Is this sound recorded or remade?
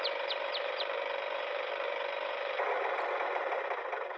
remade